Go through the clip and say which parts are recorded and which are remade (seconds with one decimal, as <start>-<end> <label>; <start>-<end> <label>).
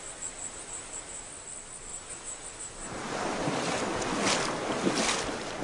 0.0-1.9 recorded; 1.9-3.8 remade; 3.8-5.6 recorded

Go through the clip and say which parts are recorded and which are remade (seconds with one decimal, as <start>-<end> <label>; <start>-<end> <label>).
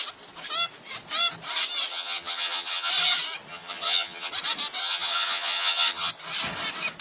0.0-1.9 recorded; 1.9-2.9 remade; 2.9-3.5 recorded; 3.5-4.3 remade; 4.3-4.8 recorded; 4.8-6.1 remade; 6.1-7.0 recorded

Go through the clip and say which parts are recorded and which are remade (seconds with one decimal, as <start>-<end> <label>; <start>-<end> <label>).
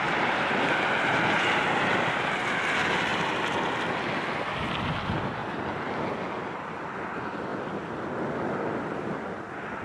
0.0-5.4 recorded; 5.4-6.0 remade; 6.0-7.5 recorded; 7.5-8.8 remade; 8.8-9.8 recorded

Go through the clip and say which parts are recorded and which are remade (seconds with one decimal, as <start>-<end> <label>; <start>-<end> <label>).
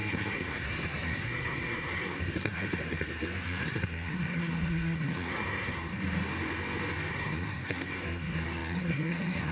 0.0-5.9 remade; 5.9-7.1 recorded; 7.1-9.5 remade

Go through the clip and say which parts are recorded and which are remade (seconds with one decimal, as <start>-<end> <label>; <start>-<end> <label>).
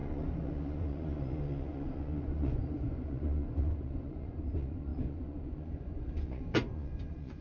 0.0-7.4 remade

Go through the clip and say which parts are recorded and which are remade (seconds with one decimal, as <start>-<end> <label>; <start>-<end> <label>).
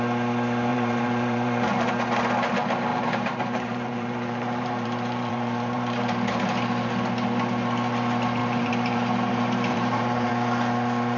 0.0-0.7 recorded; 0.7-1.9 remade; 1.9-2.9 recorded; 2.9-6.4 remade; 6.4-8.4 recorded; 8.4-10.3 remade; 10.3-11.2 recorded